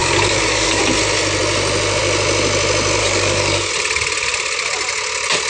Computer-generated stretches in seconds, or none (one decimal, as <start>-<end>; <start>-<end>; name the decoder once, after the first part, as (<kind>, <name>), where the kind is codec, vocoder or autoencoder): 0.0-0.8 (codec, DAC); 3.0-3.7

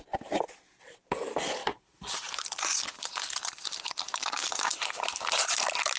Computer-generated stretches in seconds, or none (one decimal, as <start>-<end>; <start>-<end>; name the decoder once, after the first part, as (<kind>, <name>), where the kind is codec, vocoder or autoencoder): 4.1-4.7 (codec, DAC)

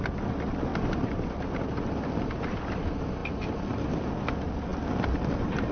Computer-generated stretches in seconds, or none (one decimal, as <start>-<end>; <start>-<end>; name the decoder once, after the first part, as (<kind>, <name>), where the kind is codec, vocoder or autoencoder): none

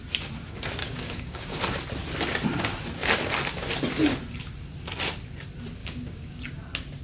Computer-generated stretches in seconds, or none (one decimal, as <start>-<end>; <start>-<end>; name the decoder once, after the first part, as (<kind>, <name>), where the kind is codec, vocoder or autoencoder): 0.8-1.6 (codec, DAC); 5.8-6.4

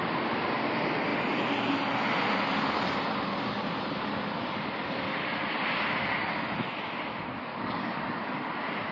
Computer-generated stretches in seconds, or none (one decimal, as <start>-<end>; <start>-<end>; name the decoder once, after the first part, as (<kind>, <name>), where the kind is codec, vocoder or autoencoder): 7.4-8.4 (codec, DAC)

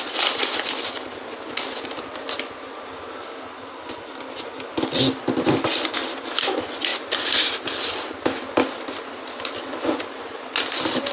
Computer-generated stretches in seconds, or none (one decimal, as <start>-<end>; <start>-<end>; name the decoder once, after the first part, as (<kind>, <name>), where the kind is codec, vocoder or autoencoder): none